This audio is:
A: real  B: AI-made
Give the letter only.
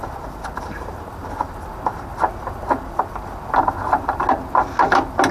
A